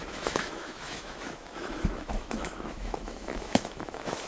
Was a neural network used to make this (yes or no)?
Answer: yes